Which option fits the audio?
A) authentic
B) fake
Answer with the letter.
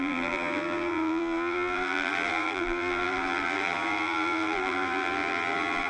B